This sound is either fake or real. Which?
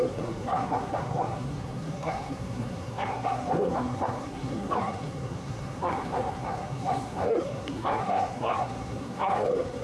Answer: fake